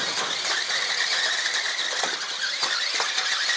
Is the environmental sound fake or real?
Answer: real